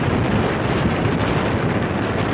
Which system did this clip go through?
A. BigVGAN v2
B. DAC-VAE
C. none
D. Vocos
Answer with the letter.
C